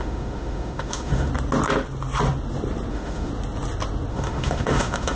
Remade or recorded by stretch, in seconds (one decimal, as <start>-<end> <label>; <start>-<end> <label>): 0.0-1.3 remade; 1.3-2.9 recorded; 2.9-3.3 remade; 3.3-4.1 recorded; 4.1-5.2 remade